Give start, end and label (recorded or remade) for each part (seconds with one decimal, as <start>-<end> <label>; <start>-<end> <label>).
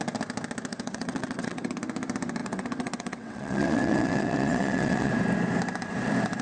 0.0-0.7 recorded; 0.7-1.8 remade; 1.8-2.4 recorded; 2.4-5.1 remade; 5.1-6.4 recorded